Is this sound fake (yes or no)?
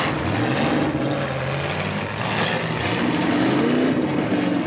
no